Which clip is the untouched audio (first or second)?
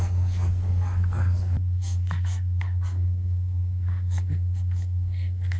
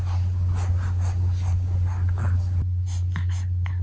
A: second